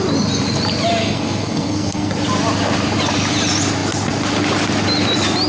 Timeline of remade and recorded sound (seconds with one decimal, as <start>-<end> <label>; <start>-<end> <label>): 0.0-1.0 recorded; 1.0-2.1 remade; 2.1-5.5 recorded